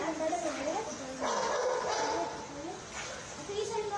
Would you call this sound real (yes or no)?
yes